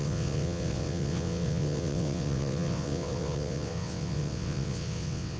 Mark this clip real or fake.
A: fake